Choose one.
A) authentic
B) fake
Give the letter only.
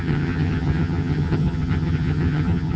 B